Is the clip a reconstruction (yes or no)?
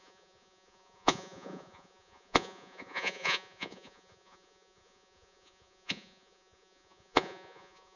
yes